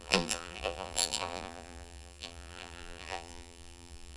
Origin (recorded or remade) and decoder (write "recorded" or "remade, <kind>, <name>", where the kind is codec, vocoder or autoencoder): remade, vocoder, BigVGAN v2